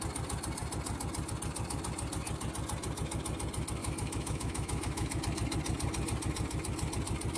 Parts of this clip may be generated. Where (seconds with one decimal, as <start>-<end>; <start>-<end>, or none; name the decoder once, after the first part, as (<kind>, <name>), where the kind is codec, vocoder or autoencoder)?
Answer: 3.8-5.2 (autoencoder, DAC-VAE)